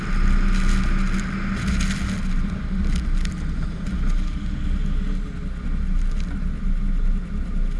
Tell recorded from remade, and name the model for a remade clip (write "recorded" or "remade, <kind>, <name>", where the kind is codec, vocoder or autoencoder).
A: recorded